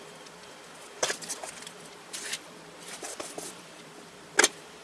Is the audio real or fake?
real